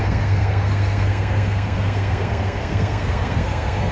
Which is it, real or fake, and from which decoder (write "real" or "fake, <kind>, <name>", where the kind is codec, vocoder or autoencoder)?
fake, codec, SNAC